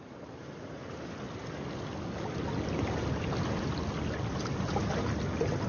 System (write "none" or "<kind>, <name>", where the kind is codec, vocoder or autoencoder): none